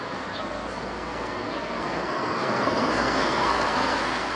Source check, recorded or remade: remade